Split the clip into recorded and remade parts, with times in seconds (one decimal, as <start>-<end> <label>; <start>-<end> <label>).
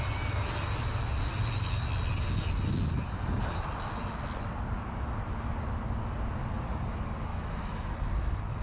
0.0-7.3 recorded; 7.3-7.9 remade; 7.9-8.6 recorded